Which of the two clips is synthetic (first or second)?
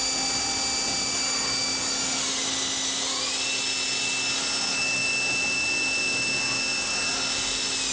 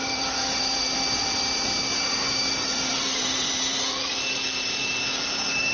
second